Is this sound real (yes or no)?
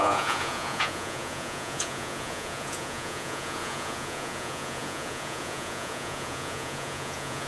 no